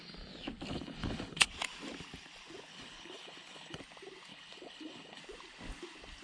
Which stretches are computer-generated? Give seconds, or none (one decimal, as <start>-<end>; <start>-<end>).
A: 0.7-1.5; 2.7-3.8; 4.3-5.2